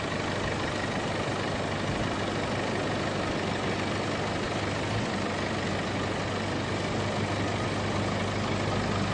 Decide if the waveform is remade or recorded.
recorded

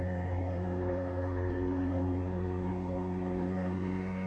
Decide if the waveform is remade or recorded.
remade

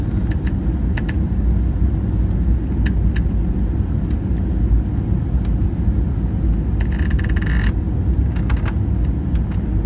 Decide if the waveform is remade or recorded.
recorded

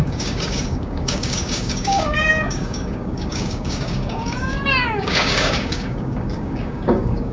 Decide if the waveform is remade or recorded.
remade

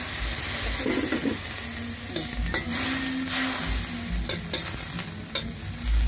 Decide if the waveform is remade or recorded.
recorded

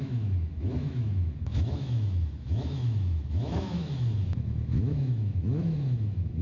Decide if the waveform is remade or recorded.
remade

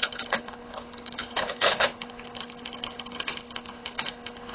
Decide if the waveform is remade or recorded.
remade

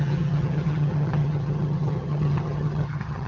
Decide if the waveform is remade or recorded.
remade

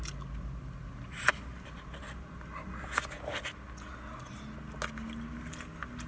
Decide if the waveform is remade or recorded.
recorded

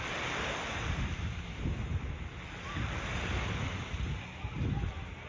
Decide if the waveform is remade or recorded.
recorded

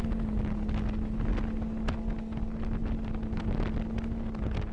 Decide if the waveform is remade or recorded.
recorded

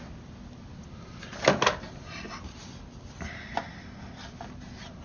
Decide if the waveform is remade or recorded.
recorded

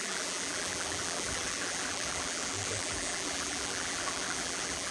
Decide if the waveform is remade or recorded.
remade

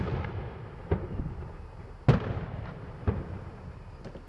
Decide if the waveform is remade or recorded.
recorded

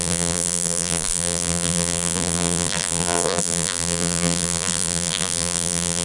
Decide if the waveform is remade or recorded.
remade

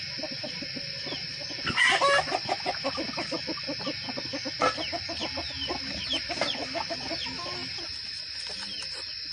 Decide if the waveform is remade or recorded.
recorded